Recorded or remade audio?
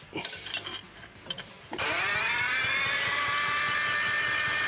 remade